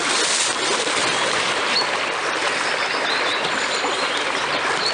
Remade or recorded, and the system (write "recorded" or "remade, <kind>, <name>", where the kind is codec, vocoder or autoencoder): recorded